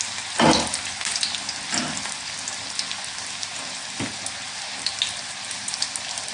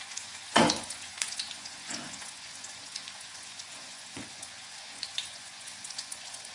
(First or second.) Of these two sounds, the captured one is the first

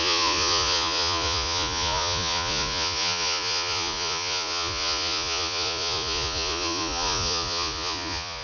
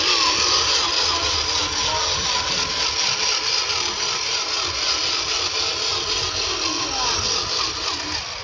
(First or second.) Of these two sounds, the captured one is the second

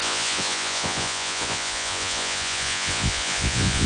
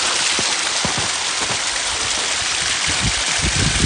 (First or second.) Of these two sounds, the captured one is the second